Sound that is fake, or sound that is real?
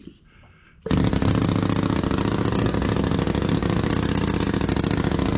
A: real